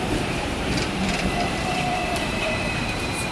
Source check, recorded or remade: remade